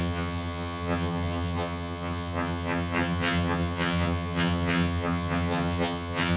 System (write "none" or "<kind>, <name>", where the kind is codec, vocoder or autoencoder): vocoder, HiFi-GAN